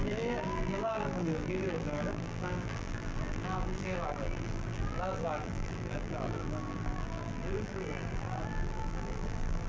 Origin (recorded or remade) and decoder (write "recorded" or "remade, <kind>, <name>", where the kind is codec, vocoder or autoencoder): remade, vocoder, BigVGAN v2